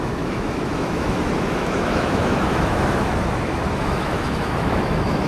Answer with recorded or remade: remade